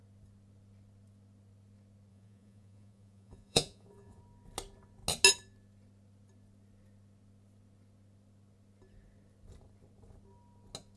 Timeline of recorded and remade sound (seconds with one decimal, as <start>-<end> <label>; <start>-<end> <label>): 0.0-2.1 recorded; 2.1-4.2 remade; 4.2-11.0 recorded